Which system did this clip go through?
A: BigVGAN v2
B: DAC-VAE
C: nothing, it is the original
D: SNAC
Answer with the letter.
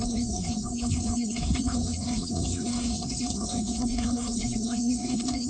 D